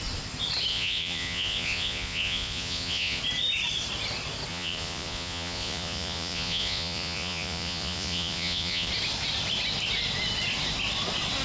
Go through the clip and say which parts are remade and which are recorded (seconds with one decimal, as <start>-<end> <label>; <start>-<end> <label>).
0.0-0.7 recorded; 0.7-3.2 remade; 3.2-4.5 recorded; 4.5-8.9 remade; 8.9-11.4 recorded